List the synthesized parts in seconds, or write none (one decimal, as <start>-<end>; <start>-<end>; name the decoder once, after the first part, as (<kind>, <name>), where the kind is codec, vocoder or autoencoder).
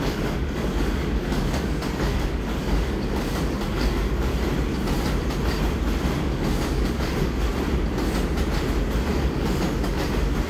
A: 0.0-4.3 (codec, DAC); 6.2-7.5; 9.1-10.5